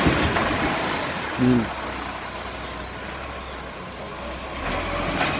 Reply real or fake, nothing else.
real